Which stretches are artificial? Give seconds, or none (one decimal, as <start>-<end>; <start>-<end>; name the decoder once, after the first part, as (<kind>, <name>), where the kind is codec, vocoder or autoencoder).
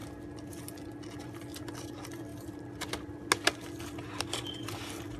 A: none